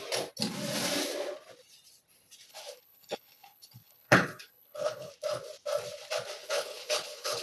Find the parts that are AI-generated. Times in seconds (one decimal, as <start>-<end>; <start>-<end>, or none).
2.5-5.1; 6.4-7.4